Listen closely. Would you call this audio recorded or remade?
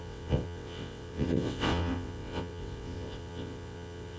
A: remade